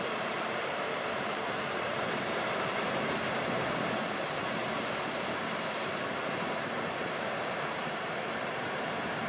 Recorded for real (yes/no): no